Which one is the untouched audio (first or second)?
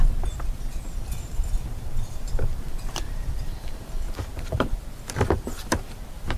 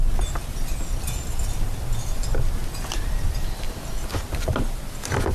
second